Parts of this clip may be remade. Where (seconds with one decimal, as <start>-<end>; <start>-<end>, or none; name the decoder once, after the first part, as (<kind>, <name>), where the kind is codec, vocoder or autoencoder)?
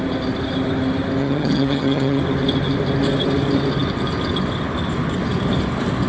1.2-2.2 (vocoder, HiFi-GAN)